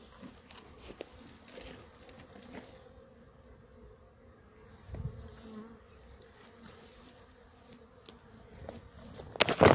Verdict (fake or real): real